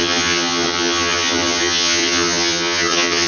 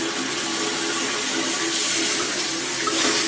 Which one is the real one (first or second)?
second